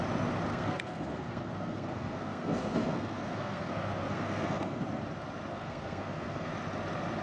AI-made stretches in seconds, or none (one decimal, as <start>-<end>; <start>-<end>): 0.5-4.8; 5.5-6.5